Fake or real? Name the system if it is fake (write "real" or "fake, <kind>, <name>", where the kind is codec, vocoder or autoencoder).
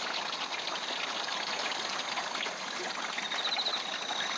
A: real